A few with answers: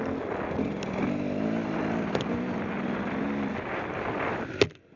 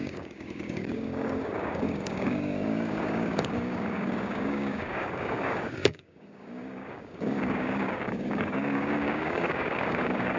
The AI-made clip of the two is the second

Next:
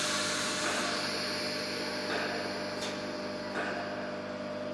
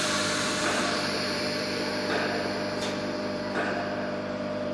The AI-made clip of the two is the second